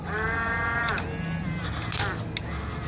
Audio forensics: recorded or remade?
recorded